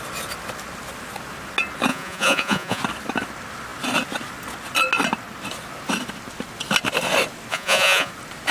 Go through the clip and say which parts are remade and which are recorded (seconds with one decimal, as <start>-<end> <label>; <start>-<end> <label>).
0.0-1.9 recorded; 1.9-2.8 remade; 2.8-7.5 recorded; 7.5-8.1 remade; 8.1-8.5 recorded